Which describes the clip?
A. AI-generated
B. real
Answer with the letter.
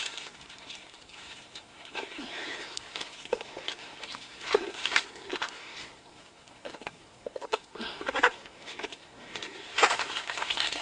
A